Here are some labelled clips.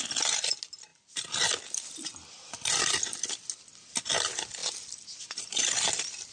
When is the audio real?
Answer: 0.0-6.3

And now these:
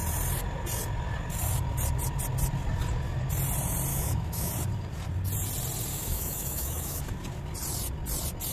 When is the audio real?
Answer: 0.0-3.9; 4.5-5.9; 7.0-8.5

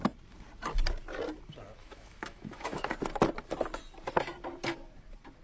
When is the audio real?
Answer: 0.0-1.8; 2.9-5.4

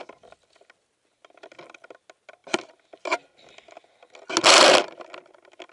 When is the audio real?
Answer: 0.0-5.7

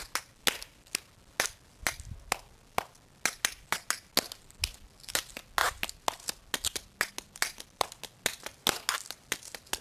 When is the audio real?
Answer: 0.0-9.8

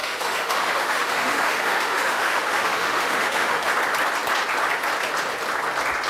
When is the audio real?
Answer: 3.7-6.1

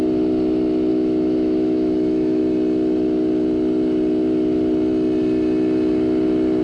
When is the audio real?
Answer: 0.0-0.9; 2.4-6.6

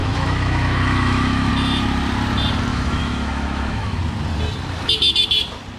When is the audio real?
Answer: 1.5-2.7; 4.0-5.8